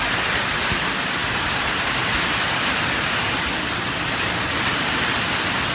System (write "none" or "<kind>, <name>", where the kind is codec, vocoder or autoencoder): none